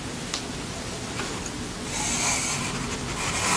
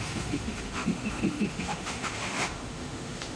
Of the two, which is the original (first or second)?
first